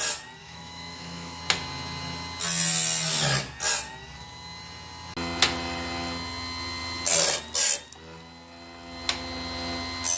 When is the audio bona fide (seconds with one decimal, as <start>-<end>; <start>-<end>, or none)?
0.0-0.4; 1.4-10.2

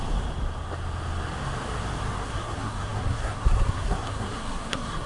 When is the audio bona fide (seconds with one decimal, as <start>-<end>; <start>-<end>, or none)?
0.0-2.2